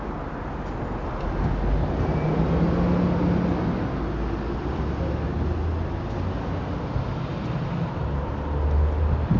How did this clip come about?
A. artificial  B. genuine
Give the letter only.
B